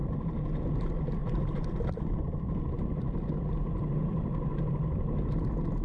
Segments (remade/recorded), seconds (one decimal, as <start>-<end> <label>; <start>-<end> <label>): 0.0-0.6 remade; 0.6-1.2 recorded; 1.2-4.7 remade; 4.7-5.8 recorded